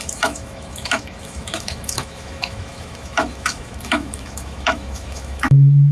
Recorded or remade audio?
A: remade